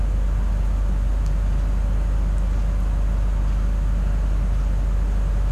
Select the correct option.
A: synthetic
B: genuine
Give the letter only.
B